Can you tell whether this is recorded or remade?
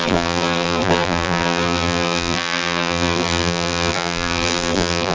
remade